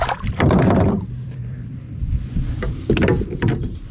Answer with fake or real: fake